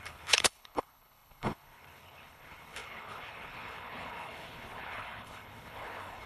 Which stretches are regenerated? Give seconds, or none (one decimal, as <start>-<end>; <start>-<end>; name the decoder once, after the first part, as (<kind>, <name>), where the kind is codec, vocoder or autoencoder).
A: 0.0-6.3 (codec, HILCodec)